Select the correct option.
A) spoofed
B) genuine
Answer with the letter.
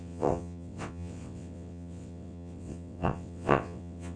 A